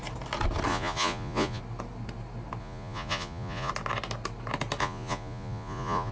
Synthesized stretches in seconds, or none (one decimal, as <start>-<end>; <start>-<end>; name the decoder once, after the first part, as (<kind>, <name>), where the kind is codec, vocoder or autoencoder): 0.7-1.6 (vocoder, Vocos); 2.6-3.7; 4.8-6.1